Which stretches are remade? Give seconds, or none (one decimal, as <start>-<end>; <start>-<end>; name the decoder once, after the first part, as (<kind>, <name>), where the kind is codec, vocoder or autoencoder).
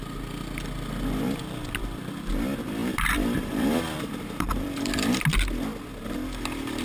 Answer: 2.8-5.1 (vocoder, BigVGAN v2)